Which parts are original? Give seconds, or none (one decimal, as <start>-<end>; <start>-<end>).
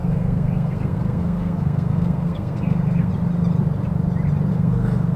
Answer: 3.1-4.5